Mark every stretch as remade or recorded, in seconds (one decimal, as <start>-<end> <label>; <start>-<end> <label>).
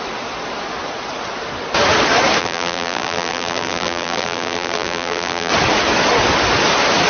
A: 0.0-2.4 recorded; 2.4-5.5 remade; 5.5-7.1 recorded